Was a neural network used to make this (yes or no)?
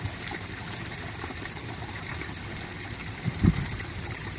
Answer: no